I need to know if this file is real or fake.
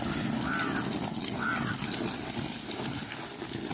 real